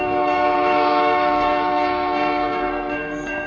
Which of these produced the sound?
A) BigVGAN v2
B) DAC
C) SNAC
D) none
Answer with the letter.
C